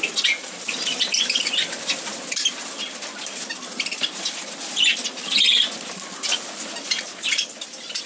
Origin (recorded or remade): recorded